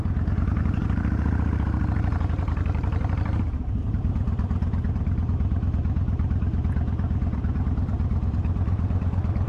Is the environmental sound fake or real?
fake